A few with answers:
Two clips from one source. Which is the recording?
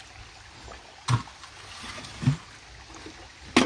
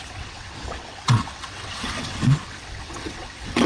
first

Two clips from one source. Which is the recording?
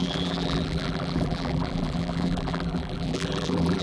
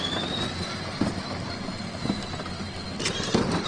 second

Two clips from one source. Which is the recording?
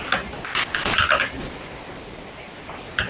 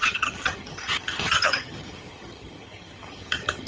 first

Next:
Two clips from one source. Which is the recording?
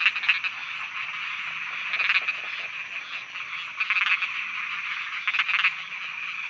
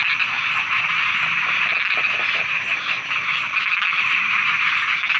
first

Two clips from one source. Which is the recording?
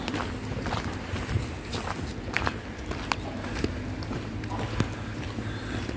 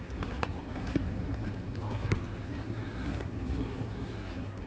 first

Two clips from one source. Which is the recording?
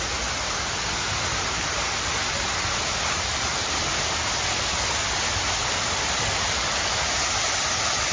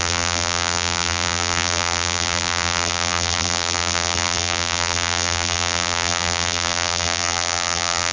first